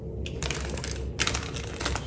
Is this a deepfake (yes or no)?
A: no